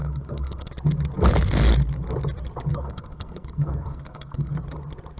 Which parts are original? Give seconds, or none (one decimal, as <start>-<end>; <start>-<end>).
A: 0.7-2.7; 4.5-5.2